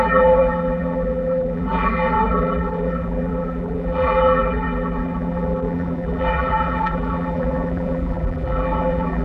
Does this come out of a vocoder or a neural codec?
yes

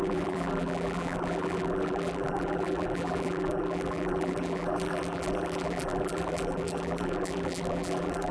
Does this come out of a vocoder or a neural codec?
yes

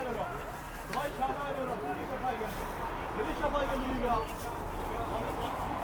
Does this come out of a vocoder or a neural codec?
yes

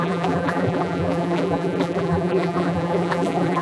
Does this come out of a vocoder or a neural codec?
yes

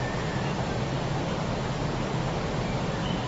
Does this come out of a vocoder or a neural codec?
no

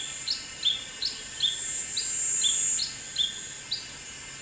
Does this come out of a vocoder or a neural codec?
no